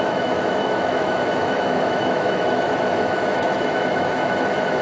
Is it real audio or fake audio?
fake